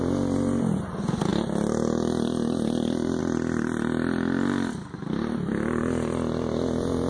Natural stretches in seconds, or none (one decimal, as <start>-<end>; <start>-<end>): 0.0-7.1